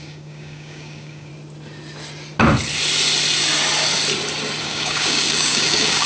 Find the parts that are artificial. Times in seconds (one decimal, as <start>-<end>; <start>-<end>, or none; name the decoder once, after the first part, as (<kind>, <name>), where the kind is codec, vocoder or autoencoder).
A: 0.0-1.3 (codec, DAC); 4.6-6.1